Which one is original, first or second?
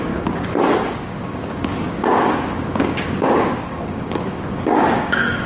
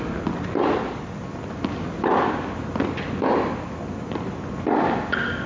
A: second